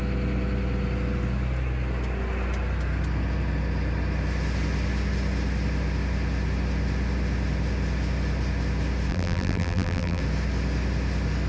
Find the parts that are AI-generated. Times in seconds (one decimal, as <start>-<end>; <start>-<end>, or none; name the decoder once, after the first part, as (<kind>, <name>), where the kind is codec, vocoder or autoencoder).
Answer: 9.1-10.2 (vocoder, BigVGAN v2)